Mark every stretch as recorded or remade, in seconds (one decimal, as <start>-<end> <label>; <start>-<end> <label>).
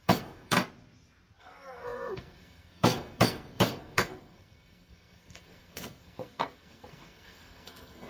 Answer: 0.0-0.6 remade; 0.6-1.4 recorded; 1.4-8.1 remade